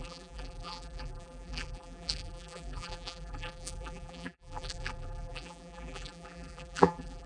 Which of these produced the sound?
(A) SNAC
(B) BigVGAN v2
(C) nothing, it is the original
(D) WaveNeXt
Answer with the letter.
B